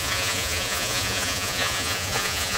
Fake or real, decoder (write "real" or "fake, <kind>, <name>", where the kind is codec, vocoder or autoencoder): fake, vocoder, Vocos